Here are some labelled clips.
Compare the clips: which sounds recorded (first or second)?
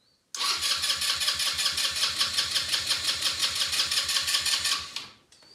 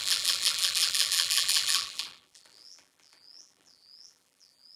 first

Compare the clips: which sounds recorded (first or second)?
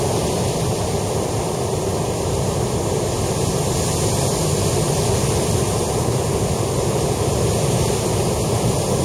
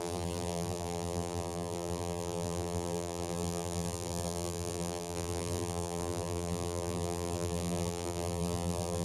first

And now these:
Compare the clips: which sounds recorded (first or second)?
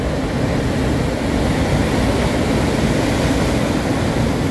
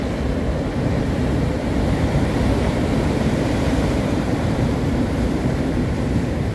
first